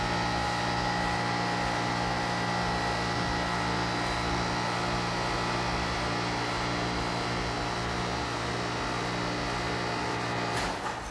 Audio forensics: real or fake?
real